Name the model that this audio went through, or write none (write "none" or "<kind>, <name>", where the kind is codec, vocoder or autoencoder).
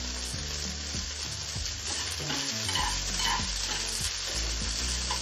none